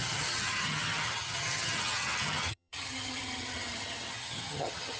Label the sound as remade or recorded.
remade